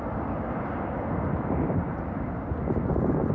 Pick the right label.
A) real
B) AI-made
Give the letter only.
A